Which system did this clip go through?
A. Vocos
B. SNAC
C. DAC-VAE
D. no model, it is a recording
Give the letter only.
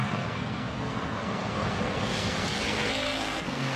B